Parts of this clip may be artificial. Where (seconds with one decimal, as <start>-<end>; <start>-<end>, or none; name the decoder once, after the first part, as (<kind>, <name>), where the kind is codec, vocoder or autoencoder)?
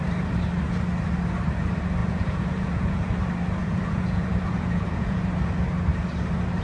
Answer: 2.0-3.1 (vocoder, Vocos); 3.6-5.3